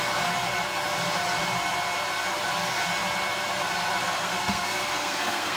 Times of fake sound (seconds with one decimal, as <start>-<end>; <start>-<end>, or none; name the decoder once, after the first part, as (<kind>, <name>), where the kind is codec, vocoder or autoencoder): 4.0-5.6 (codec, SNAC)